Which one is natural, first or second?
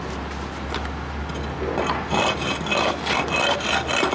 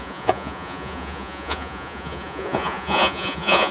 first